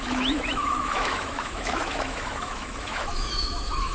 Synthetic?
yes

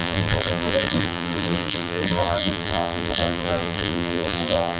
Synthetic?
yes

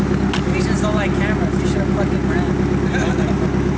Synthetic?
no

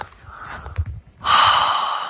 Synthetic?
no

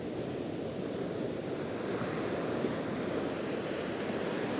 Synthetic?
no